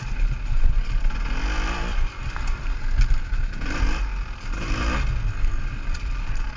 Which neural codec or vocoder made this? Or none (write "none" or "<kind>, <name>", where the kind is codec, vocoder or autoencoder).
none